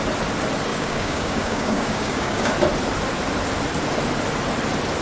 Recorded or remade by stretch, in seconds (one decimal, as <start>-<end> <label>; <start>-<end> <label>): 0.0-0.7 recorded; 0.7-2.5 remade; 2.5-5.0 recorded